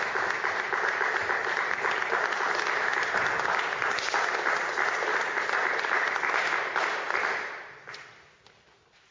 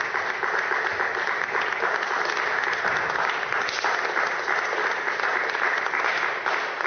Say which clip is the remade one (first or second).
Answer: first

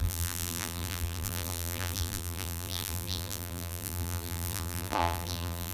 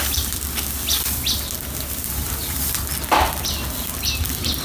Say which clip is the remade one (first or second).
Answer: first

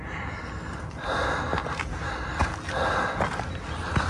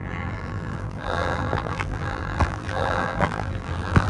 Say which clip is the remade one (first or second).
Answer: second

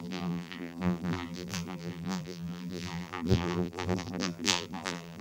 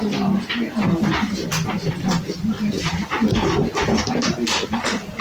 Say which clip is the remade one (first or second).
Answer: first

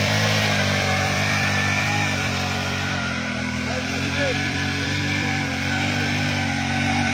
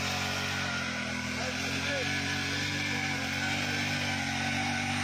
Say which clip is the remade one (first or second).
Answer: first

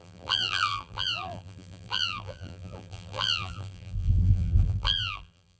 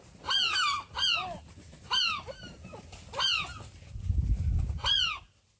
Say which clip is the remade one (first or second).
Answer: first